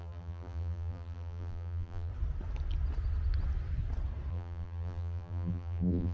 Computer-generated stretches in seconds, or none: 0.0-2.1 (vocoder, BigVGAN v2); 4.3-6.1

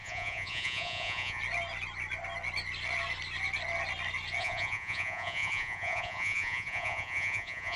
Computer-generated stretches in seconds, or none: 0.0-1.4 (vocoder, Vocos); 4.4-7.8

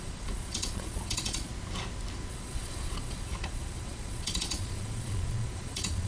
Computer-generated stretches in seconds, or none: 0.0-1.5 (vocoder, Vocos); 2.3-6.1

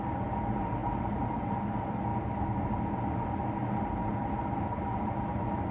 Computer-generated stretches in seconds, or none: none